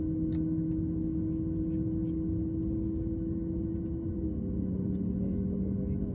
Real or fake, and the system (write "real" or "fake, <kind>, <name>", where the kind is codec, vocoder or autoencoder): real